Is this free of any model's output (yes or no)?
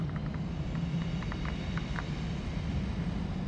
yes